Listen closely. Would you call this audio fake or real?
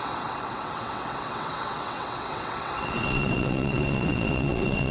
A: fake